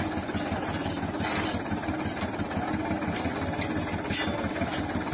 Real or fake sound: real